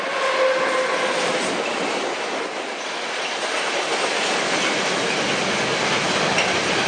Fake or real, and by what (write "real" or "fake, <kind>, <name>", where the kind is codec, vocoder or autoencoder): real